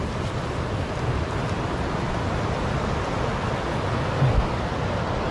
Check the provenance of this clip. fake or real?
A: real